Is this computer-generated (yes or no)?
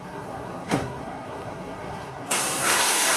yes